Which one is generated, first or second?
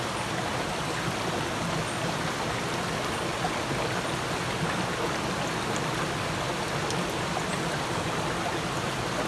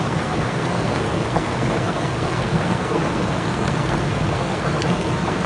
second